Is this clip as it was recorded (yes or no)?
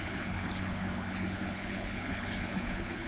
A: no